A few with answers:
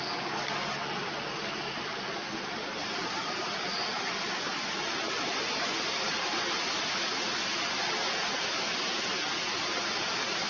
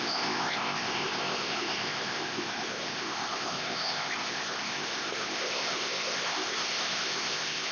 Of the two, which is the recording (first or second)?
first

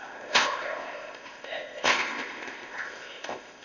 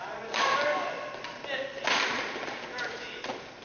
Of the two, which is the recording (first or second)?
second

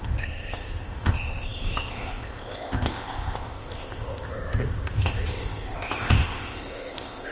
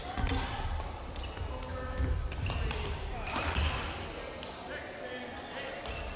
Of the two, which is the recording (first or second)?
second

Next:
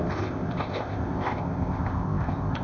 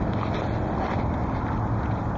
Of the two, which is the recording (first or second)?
second